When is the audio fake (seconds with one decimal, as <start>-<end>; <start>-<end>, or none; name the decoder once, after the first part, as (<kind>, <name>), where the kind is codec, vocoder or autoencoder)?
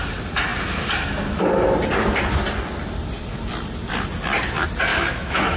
4.9-5.6 (autoencoder, DAC-VAE)